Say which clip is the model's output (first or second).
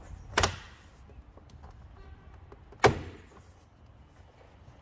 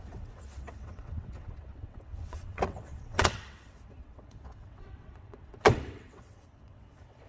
second